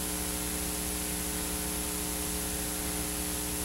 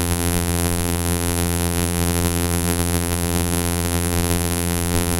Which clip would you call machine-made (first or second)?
second